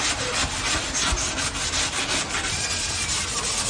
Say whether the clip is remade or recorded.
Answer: recorded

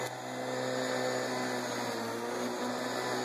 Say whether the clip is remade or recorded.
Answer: recorded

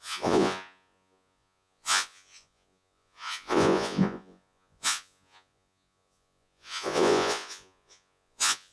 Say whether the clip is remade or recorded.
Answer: remade